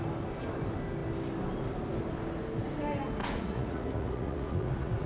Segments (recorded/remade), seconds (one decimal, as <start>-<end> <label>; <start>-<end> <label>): 0.0-3.2 recorded; 3.2-5.1 remade